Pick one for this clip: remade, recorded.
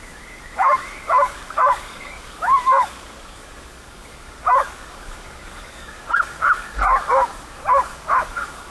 remade